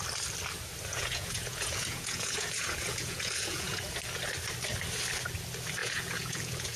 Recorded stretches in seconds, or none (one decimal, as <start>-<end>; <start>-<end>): 0.0-0.9; 3.8-5.8